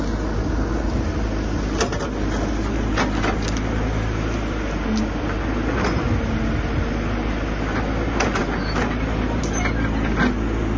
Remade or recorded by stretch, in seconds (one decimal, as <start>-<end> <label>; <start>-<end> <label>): 0.0-10.8 recorded

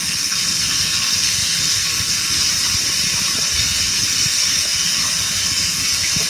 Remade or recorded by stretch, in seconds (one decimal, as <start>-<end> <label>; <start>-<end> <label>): 0.0-2.5 remade; 2.5-3.6 recorded; 3.6-6.3 remade

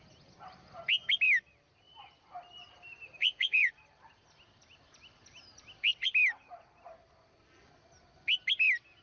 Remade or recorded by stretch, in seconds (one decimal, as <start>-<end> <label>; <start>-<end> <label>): 0.0-3.2 recorded; 3.2-3.7 remade; 3.7-9.0 recorded

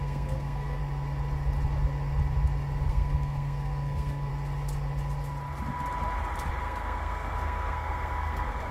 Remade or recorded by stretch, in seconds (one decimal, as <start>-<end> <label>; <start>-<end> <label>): 0.0-0.8 remade; 0.8-2.9 recorded; 2.9-4.3 remade; 4.3-6.6 recorded; 6.6-8.7 remade

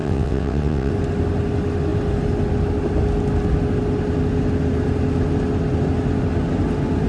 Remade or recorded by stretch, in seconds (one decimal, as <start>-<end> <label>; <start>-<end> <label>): 0.0-0.9 remade; 0.9-7.1 recorded